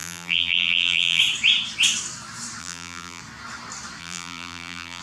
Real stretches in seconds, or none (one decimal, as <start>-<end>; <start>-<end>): 1.2-2.6; 3.2-4.0